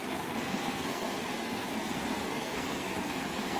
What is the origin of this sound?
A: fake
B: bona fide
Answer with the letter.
A